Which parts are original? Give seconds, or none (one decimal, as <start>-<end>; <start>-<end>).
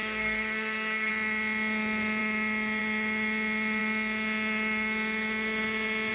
1.1-6.1